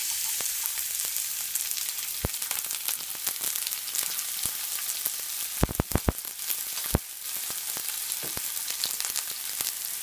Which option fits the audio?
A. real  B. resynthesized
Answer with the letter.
A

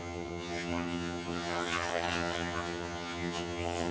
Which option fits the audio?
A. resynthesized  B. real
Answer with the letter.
A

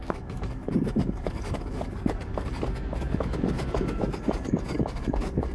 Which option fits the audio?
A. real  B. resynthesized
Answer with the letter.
B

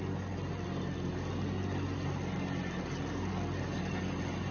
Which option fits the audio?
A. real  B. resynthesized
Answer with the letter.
A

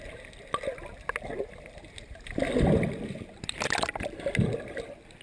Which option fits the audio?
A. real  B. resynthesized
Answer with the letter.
A